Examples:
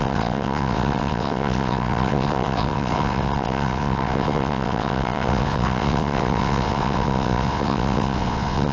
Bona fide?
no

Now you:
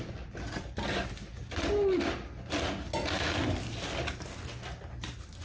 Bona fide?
yes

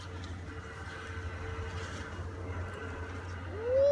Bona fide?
yes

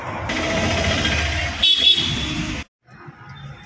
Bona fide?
yes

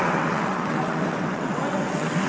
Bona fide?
no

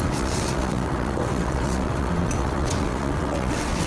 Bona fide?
no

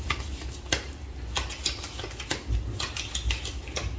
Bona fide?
yes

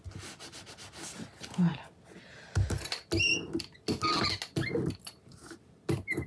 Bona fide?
yes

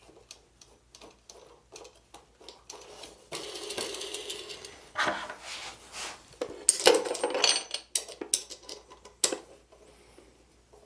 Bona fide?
yes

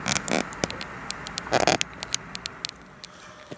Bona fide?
yes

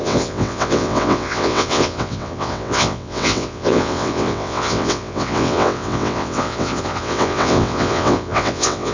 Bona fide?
no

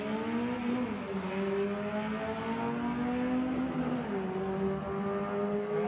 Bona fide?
yes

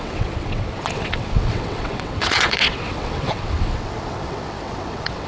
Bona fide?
no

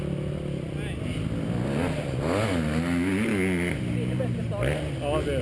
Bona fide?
yes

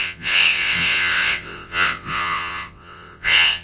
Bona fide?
no